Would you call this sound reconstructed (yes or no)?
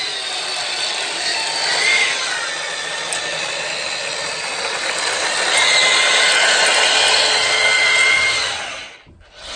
no